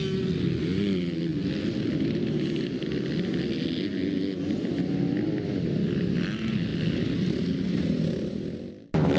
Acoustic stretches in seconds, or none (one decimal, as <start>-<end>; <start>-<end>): 0.0-9.2